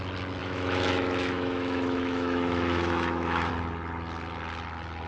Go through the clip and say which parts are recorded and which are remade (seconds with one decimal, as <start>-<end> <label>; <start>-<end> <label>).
0.0-0.4 recorded; 0.4-3.5 remade; 3.5-5.1 recorded